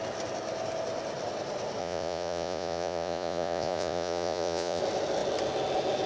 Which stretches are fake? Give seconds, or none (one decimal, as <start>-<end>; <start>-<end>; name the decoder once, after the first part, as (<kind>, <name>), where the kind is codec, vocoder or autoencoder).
1.8-4.8 (vocoder, Vocos)